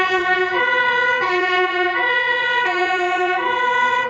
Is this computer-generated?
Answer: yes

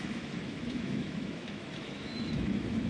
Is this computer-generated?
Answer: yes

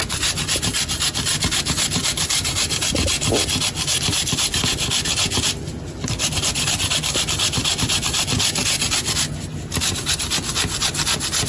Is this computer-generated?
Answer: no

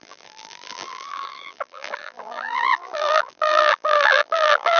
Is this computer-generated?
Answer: yes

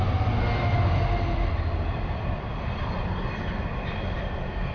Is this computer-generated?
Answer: no